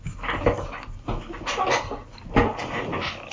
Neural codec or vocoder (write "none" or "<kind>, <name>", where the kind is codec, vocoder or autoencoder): none